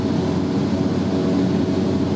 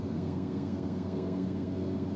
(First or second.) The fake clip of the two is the second